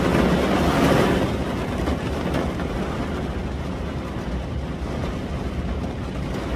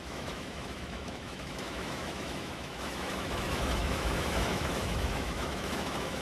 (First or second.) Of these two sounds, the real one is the first